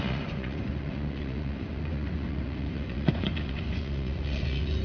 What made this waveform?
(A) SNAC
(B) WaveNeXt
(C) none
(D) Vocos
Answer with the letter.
D